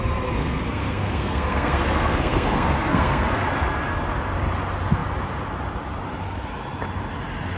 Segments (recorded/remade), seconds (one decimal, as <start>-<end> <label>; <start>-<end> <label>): 0.0-0.4 recorded; 0.4-3.4 remade; 3.4-7.6 recorded